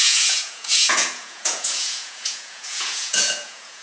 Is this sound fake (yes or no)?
yes